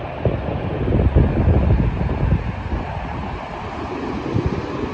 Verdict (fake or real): real